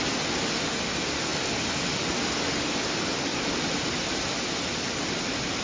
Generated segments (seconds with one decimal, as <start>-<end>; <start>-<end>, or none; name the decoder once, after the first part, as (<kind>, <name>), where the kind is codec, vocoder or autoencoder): none